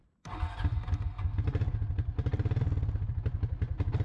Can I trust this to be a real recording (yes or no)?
yes